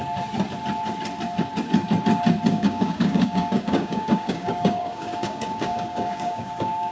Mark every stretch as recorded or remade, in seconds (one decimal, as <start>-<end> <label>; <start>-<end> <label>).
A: 0.0-2.5 recorded; 2.5-6.9 remade